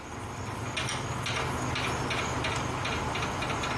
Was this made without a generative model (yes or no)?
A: yes